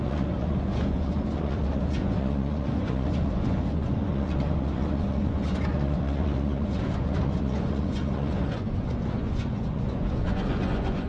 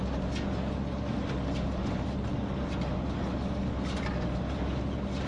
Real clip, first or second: second